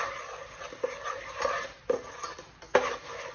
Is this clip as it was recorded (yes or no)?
yes